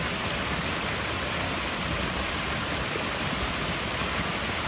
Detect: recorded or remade recorded